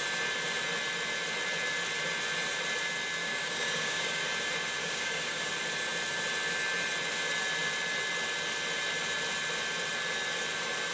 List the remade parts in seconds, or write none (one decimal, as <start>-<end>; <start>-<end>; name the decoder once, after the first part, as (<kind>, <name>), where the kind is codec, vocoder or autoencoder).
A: 3.2-4.2 (codec, DAC); 4.8-5.5